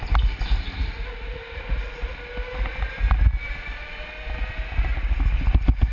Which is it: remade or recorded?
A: recorded